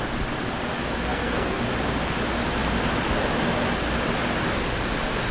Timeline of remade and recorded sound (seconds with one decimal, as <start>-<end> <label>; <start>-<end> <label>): 0.0-1.1 recorded; 1.1-1.6 remade; 1.6-5.3 recorded